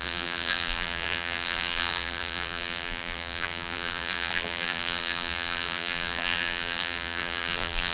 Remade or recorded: remade